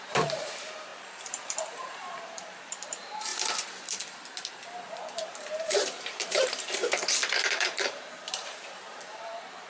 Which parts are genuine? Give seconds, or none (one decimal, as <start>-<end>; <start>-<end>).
3.3-4.9; 6.8-7.5